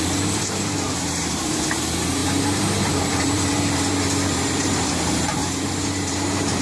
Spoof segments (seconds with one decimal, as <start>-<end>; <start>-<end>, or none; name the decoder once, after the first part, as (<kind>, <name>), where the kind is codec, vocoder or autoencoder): 0.0-6.6 (vocoder, BigVGAN v2)

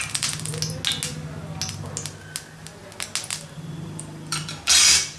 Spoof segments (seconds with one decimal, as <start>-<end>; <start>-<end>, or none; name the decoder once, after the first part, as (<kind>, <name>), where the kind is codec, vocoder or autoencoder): 0.0-0.5 (vocoder, BigVGAN v2); 3.6-5.2

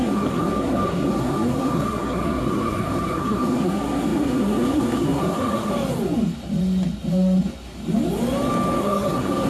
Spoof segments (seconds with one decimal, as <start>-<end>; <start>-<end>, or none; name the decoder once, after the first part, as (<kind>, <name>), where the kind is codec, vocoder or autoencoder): 0.0-5.7 (codec, SNAC); 8.8-9.5

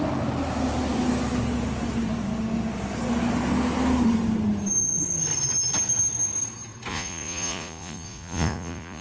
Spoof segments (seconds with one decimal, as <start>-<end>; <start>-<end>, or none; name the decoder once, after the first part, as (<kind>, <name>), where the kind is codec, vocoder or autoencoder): 6.9-9.0 (vocoder, Vocos)

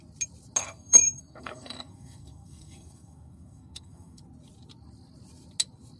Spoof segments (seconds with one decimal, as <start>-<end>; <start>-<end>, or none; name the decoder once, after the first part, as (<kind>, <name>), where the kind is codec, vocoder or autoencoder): 0.6-4.2 (codec, SNAC)

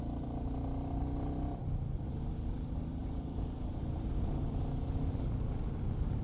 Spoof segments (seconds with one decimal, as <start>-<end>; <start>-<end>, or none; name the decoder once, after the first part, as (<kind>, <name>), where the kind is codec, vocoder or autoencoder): none